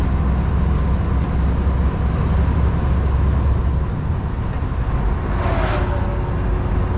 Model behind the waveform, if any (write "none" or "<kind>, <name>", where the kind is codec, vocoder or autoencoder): none